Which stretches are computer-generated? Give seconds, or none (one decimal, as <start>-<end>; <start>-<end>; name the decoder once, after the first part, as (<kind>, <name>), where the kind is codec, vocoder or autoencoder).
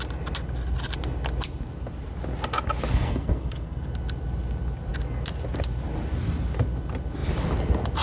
2.9-3.8 (codec, SNAC)